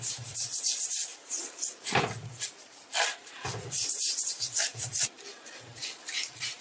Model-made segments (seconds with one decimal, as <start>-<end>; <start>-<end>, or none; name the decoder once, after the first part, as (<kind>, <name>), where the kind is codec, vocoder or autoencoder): 0.0-6.6 (vocoder, BigVGAN v2)